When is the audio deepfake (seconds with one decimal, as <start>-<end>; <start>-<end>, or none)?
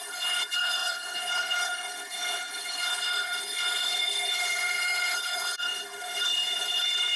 0.0-7.2